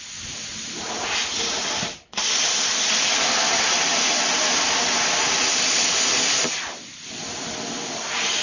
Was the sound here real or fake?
real